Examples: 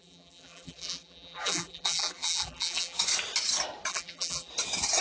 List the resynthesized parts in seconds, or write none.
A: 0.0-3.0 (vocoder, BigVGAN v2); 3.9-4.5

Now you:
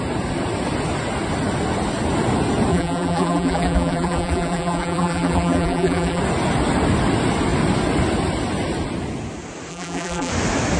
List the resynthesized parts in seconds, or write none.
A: 2.7-6.2 (vocoder, BigVGAN v2); 9.7-10.3

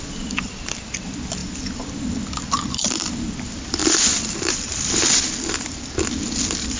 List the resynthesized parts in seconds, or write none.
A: 1.4-3.3 (vocoder, BigVGAN v2); 3.8-5.2